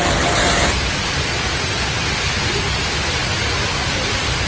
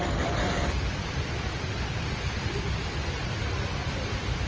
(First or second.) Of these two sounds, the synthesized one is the second